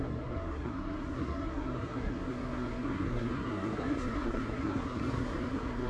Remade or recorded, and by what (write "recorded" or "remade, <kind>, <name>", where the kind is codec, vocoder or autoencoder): remade, codec, SNAC